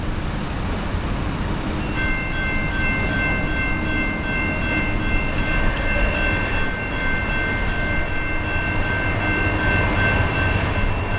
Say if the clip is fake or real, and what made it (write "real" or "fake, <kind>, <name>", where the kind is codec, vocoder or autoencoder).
real